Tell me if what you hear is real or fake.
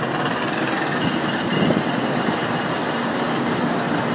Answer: real